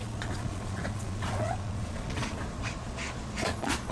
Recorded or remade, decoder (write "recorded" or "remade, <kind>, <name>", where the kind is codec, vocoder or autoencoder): remade, vocoder, Vocos